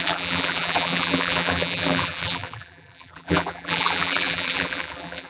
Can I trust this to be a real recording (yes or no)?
no